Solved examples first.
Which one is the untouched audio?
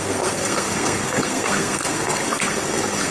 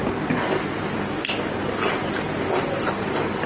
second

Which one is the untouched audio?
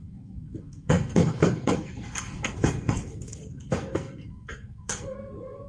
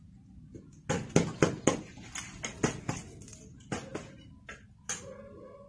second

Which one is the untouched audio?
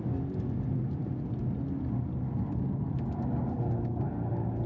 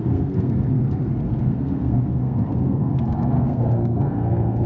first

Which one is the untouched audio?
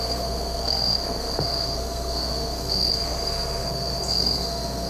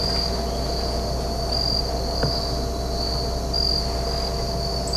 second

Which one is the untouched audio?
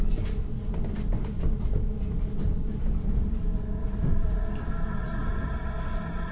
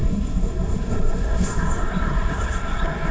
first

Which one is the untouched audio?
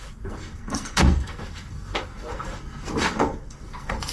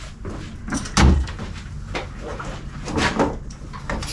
second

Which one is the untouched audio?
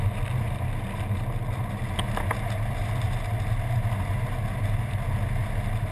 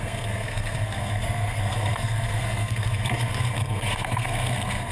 first